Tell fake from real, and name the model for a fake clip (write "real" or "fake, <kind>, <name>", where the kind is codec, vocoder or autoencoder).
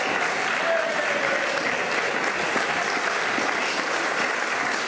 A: real